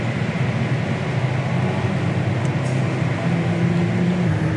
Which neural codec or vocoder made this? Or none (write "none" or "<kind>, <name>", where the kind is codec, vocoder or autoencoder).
none